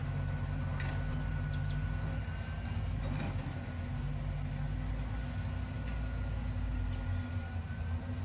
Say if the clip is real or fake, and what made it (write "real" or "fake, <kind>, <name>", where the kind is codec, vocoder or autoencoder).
real